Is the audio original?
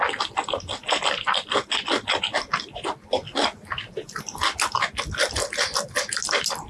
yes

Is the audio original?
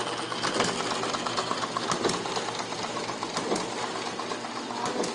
yes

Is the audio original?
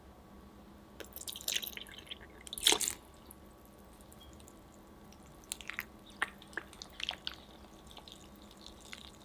yes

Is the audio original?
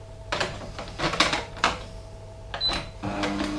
yes